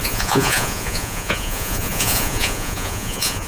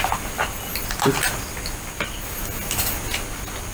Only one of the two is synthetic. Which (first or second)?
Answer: first